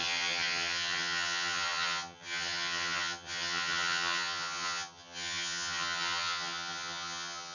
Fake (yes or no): yes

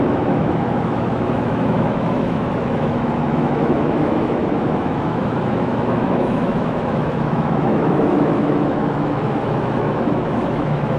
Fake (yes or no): yes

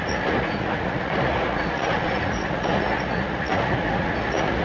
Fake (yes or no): yes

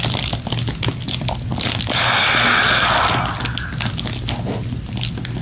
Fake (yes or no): no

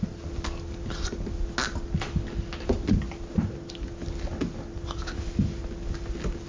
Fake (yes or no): no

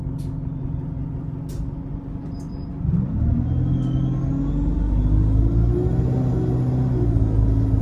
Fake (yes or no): no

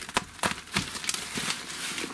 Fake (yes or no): no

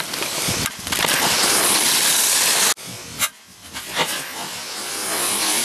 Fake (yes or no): no